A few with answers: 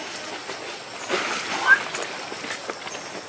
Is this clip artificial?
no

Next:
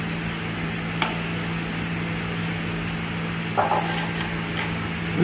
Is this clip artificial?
no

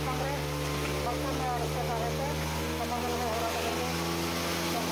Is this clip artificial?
no